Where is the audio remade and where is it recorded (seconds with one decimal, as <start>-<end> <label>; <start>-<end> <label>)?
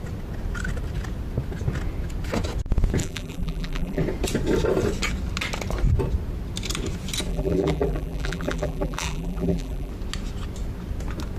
0.0-3.0 recorded; 3.0-4.0 remade; 4.0-7.3 recorded; 7.3-9.9 remade; 9.9-11.4 recorded